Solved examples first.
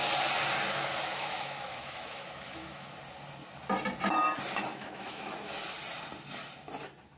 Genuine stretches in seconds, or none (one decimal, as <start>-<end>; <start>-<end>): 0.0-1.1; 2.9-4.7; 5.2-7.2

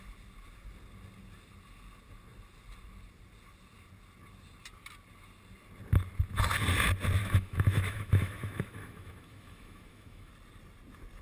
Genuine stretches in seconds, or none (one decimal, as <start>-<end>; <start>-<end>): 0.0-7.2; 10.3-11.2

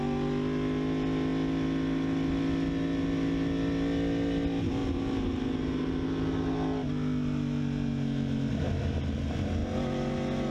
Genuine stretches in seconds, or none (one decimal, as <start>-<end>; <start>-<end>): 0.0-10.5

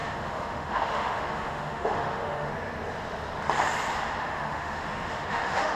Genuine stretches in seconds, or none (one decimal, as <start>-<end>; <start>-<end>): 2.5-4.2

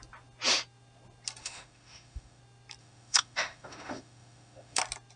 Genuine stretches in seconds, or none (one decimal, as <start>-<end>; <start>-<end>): 0.0-1.4; 2.4-2.8; 4.8-5.2